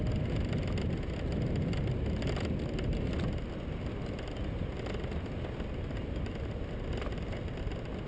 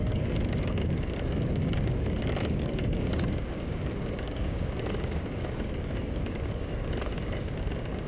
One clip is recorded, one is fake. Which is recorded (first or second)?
first